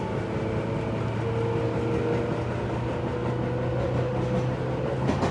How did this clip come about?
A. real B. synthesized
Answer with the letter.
A